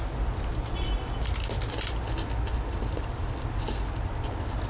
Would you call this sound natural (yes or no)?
yes